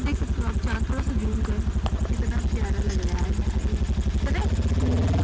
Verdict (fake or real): real